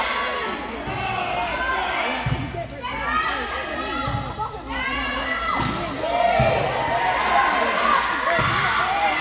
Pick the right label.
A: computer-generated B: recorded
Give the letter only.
B